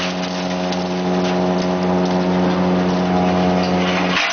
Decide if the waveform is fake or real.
real